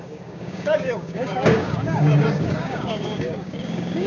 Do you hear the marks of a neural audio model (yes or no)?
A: yes